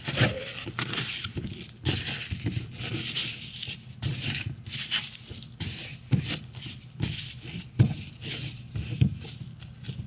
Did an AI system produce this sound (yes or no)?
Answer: no